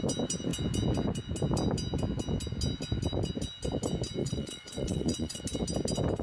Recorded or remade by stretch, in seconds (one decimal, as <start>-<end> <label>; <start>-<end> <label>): 0.0-4.2 recorded; 4.2-5.4 remade; 5.4-6.2 recorded